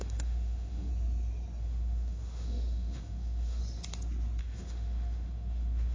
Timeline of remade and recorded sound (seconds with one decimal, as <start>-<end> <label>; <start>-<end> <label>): 0.0-0.9 remade; 0.9-1.6 recorded; 1.6-3.6 remade; 3.6-4.4 recorded; 4.4-5.9 remade